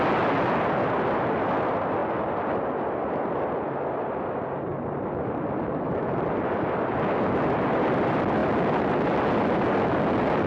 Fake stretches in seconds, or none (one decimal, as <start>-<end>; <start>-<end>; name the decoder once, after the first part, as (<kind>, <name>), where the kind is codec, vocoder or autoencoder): none